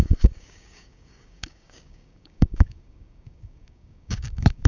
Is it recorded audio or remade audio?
remade